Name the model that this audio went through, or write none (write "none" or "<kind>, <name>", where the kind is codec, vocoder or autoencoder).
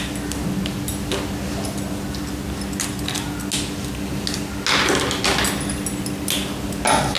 none